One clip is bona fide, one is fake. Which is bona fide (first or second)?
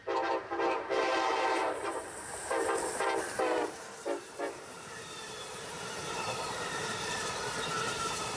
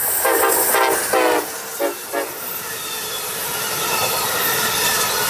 second